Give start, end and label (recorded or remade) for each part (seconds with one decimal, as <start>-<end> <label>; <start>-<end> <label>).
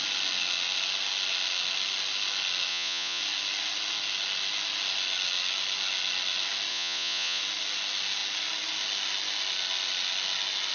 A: 0.0-2.7 recorded; 2.7-3.2 remade; 3.2-6.7 recorded; 6.7-7.4 remade; 7.4-10.7 recorded